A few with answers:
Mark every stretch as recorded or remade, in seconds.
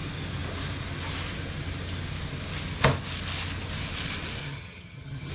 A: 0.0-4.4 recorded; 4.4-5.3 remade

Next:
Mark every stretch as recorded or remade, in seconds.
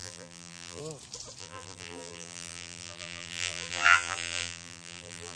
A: 0.0-0.8 remade; 0.8-1.4 recorded; 1.4-5.4 remade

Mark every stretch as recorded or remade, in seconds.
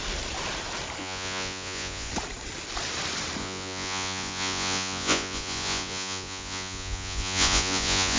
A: 0.0-1.0 recorded; 1.0-2.1 remade; 2.1-3.4 recorded; 3.4-8.2 remade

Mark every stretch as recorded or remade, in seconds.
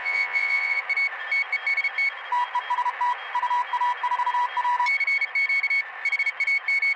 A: 0.0-0.8 remade; 0.8-7.0 recorded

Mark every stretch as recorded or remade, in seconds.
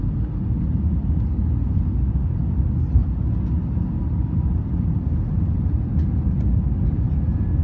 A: 0.0-7.6 recorded